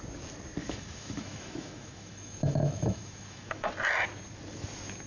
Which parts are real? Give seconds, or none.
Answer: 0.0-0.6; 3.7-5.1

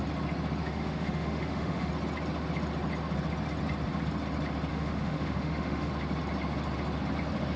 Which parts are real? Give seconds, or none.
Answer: 0.0-0.6; 1.9-4.7; 5.9-7.6